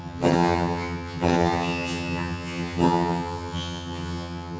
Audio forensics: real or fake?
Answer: fake